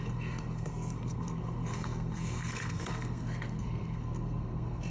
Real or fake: fake